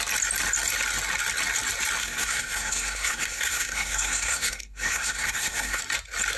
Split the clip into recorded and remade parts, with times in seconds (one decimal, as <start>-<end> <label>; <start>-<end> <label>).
0.0-2.0 recorded; 2.0-5.8 remade; 5.8-6.4 recorded